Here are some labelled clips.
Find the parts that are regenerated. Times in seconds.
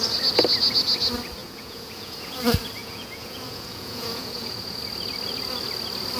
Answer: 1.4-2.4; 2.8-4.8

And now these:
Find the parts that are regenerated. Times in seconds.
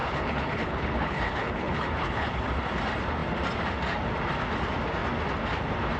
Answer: 0.0-2.5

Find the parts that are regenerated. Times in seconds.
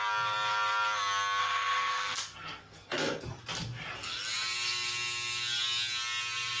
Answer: 1.4-3.2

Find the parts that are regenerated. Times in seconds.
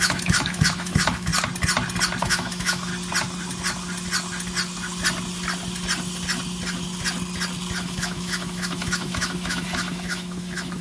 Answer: 0.0-1.3; 2.2-2.9; 7.8-10.8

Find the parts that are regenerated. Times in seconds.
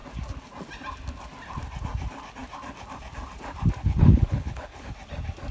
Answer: 3.8-4.9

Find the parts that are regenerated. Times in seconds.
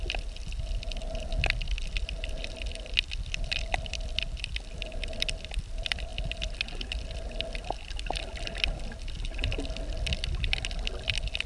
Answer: none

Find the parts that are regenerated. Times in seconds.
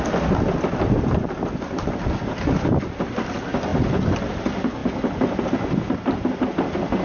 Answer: none